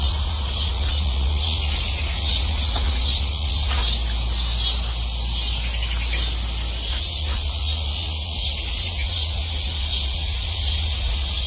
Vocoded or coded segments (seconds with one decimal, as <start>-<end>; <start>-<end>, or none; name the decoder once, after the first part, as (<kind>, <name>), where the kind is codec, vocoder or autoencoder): 0.0-3.8 (vocoder, Vocos); 6.9-11.5